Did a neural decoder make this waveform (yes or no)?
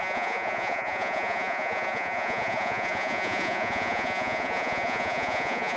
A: yes